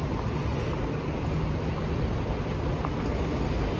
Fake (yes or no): no